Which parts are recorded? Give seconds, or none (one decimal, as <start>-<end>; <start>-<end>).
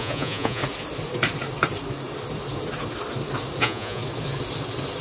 0.6-3.6; 4.0-5.0